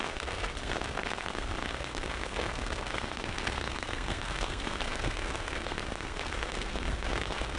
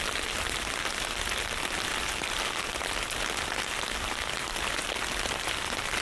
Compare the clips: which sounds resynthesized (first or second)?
first